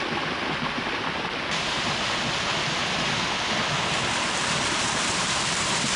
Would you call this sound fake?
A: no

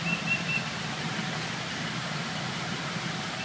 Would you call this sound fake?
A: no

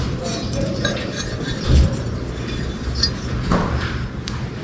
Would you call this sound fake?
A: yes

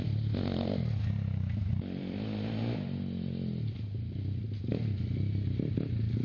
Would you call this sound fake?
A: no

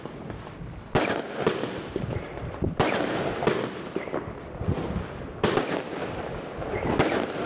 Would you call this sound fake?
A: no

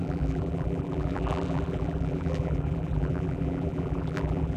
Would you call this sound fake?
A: yes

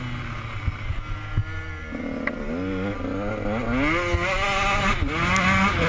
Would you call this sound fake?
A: no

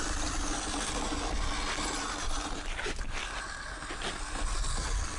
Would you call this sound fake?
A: no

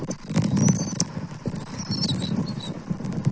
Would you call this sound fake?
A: no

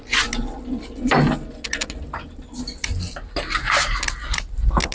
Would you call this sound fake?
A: no